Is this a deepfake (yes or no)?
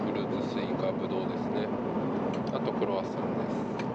no